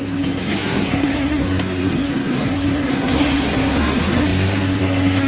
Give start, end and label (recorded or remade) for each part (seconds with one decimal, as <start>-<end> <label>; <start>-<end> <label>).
0.0-5.3 remade